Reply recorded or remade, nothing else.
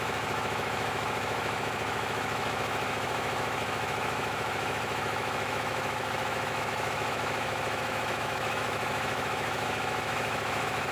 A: remade